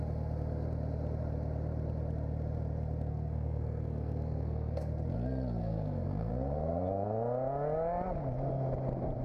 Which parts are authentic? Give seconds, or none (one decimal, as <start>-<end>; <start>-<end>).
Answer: 0.0-3.1; 4.9-5.6; 6.3-9.2